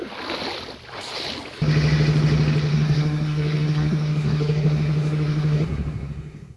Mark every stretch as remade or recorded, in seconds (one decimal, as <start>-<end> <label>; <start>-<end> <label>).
0.0-2.7 recorded; 2.7-6.6 remade